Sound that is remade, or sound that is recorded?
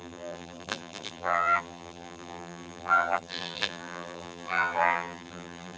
remade